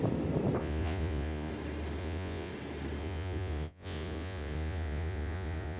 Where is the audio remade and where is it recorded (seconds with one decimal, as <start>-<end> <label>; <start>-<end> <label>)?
0.0-0.6 recorded; 0.6-1.5 remade; 1.5-2.0 recorded; 2.0-2.5 remade; 2.5-3.0 recorded; 3.0-5.8 remade